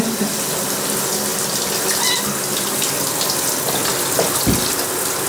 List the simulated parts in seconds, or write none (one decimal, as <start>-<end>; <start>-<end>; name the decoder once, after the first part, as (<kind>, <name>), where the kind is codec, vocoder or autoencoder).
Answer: none